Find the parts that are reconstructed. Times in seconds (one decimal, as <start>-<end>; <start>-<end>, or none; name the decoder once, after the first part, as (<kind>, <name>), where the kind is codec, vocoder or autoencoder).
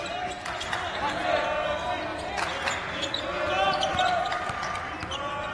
none